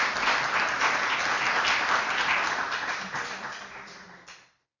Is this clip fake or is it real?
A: real